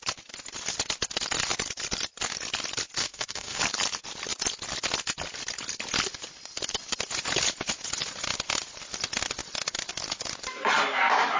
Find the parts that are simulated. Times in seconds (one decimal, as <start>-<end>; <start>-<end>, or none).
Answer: 3.0-3.6